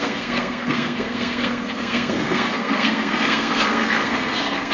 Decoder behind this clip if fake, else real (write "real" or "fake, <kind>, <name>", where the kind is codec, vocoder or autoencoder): fake, codec, SNAC